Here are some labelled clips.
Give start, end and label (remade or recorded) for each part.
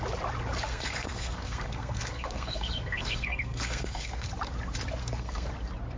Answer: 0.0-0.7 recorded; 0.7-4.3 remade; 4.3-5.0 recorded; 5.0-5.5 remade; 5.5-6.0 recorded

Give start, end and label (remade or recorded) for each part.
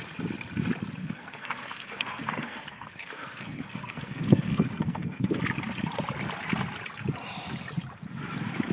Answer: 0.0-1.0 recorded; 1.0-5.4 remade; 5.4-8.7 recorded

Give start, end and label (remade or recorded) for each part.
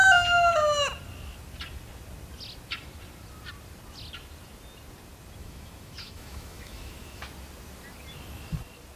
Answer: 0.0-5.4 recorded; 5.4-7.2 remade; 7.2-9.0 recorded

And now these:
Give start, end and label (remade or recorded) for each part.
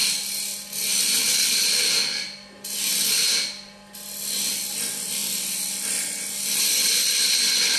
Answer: 0.0-7.8 recorded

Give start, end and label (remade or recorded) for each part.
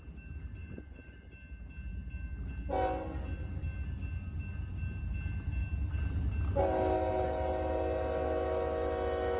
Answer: 0.0-0.6 recorded; 0.6-1.3 remade; 1.3-9.4 recorded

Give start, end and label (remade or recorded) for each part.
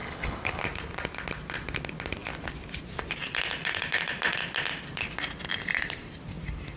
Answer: 0.0-0.6 remade; 0.6-6.8 recorded